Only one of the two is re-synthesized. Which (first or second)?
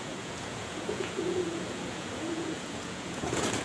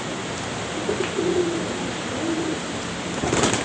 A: first